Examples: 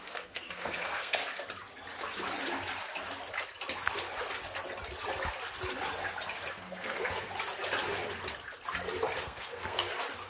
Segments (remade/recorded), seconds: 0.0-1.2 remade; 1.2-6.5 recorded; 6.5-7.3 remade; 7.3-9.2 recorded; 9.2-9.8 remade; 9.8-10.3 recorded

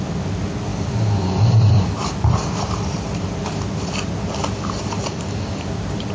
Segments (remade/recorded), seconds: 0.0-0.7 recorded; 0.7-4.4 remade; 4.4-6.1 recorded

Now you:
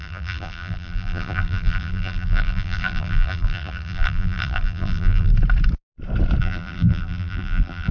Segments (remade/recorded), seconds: 0.0-5.3 remade; 5.3-6.4 recorded; 6.4-7.9 remade

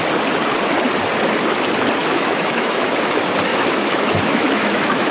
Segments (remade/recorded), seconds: 0.0-2.0 recorded; 2.0-2.9 remade; 2.9-3.5 recorded; 3.5-5.1 remade

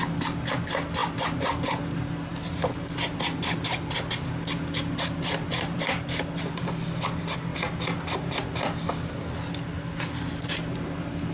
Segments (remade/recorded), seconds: 0.0-11.3 recorded

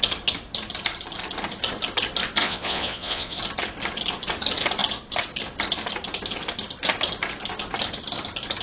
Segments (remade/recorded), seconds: 0.0-2.4 recorded; 2.4-3.4 remade; 3.4-8.6 recorded